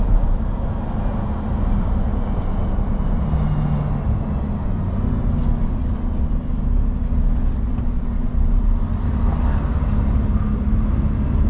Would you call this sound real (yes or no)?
yes